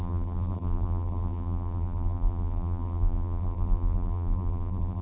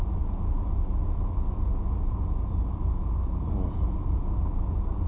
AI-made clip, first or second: first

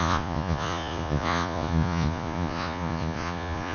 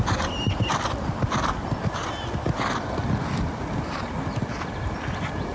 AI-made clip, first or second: first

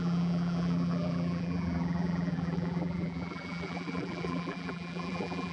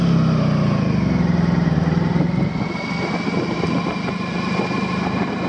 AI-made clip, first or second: first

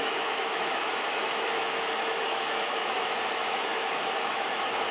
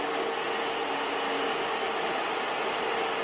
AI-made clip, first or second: first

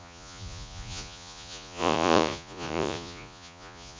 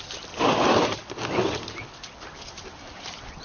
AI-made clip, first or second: first